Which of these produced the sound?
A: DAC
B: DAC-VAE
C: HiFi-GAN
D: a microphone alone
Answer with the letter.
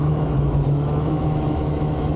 B